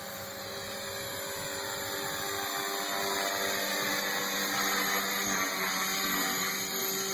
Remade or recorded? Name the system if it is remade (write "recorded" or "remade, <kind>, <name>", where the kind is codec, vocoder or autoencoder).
recorded